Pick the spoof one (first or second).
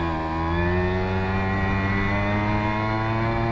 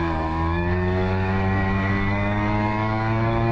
second